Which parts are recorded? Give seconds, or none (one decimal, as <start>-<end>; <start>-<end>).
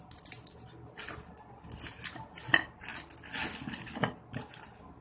0.0-5.0